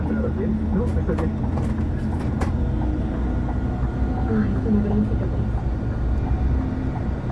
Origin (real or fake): real